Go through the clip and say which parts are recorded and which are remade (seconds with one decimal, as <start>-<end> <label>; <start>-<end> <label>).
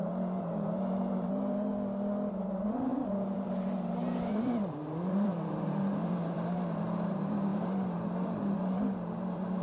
0.0-1.7 remade; 1.7-2.3 recorded; 2.3-9.6 remade